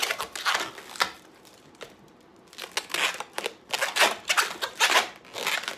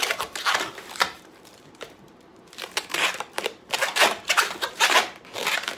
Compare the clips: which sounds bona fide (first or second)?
first